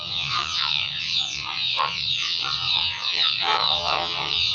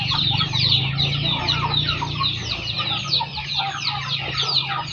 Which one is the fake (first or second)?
first